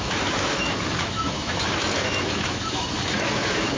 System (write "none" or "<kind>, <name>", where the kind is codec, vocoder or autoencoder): autoencoder, DAC-VAE